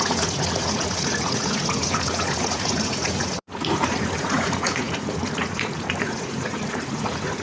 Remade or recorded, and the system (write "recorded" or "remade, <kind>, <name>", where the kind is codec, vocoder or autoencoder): remade, vocoder, Vocos